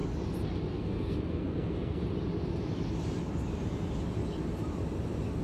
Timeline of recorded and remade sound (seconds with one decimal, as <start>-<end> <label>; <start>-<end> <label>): 0.0-0.7 recorded; 0.7-2.0 remade; 2.0-5.4 recorded

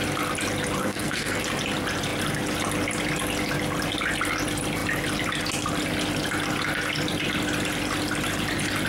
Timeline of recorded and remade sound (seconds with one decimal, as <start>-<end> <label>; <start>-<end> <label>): 0.0-0.8 recorded; 0.8-1.4 remade; 1.4-8.9 recorded